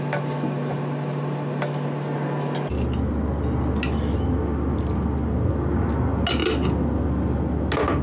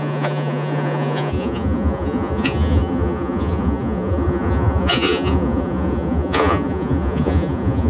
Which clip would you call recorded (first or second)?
first